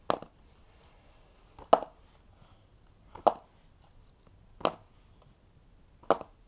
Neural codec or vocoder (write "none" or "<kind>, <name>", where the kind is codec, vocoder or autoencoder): none